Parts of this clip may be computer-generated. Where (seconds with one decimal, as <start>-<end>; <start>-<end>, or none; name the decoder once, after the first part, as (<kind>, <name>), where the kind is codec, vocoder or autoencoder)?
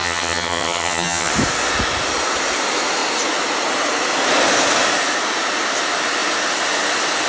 0.0-1.3 (vocoder, HiFi-GAN)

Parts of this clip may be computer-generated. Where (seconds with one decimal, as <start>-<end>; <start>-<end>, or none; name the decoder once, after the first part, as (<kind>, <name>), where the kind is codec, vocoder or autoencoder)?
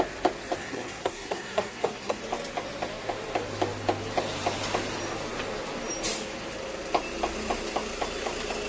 0.6-2.2 (codec, SNAC)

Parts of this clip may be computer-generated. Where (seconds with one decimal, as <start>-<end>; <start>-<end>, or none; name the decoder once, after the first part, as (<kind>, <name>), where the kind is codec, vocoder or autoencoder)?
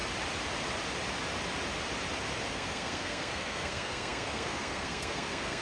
2.5-5.6 (codec, SNAC)